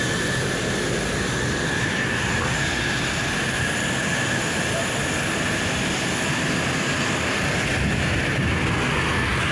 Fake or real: real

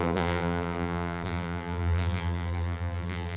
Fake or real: fake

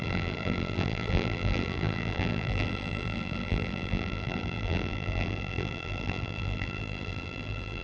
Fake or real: fake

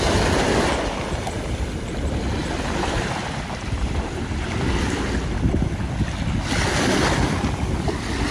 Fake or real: real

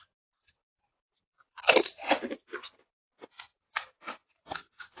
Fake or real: fake